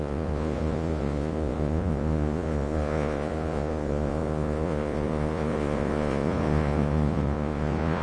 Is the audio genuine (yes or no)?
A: no